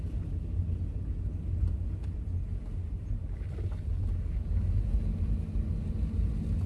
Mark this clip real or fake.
real